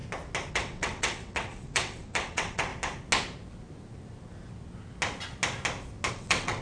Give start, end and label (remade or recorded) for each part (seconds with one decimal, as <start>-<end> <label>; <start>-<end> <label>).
0.0-0.5 recorded; 0.5-2.7 remade; 2.7-6.1 recorded; 6.1-6.6 remade